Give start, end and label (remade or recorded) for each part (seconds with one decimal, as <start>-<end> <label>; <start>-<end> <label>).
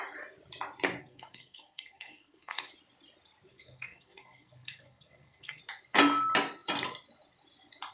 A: 0.0-1.0 recorded; 1.0-2.7 remade; 2.7-3.5 recorded; 3.5-5.6 remade; 5.6-7.9 recorded